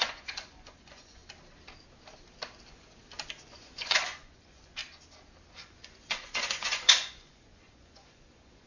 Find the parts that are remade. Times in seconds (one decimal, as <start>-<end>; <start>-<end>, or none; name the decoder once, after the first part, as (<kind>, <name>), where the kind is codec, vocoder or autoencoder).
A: 0.0-1.2 (vocoder, Vocos); 3.5-4.8; 5.5-8.7